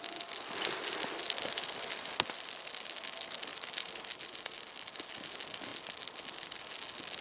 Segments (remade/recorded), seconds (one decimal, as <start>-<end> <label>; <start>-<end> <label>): 0.0-3.5 recorded; 3.5-5.0 remade; 5.0-5.7 recorded; 5.7-6.7 remade; 6.7-7.2 recorded